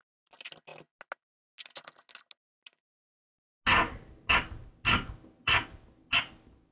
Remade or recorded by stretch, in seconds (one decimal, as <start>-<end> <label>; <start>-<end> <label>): 0.0-6.7 recorded